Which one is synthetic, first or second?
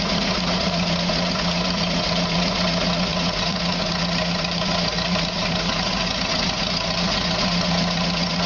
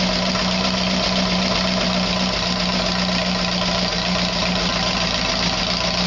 first